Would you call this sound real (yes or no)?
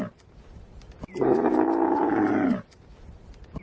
yes